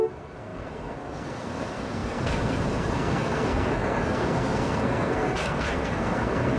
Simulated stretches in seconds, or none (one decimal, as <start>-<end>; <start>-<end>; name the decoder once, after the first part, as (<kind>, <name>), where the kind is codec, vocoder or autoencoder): 0.0-6.6 (codec, SNAC)